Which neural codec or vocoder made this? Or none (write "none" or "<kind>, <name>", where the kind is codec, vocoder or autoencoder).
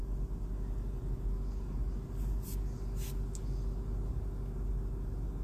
none